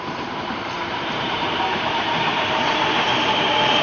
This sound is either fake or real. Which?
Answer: fake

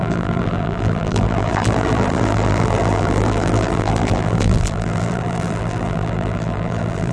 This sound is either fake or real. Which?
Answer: fake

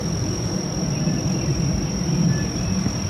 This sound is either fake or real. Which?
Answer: real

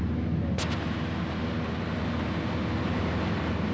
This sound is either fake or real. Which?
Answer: real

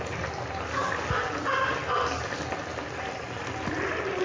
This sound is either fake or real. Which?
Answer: real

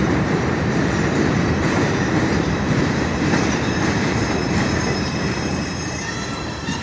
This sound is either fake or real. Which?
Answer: fake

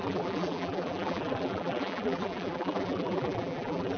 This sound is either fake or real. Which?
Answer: fake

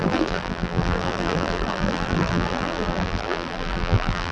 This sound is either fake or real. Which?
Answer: fake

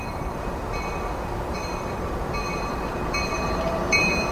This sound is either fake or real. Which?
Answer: fake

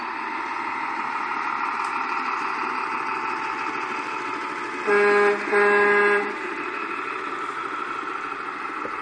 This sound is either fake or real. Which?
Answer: real